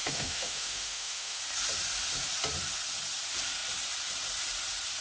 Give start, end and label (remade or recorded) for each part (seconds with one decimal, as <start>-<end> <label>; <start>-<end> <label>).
0.0-1.4 remade; 1.4-5.0 recorded